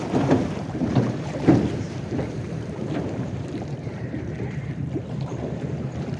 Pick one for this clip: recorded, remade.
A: remade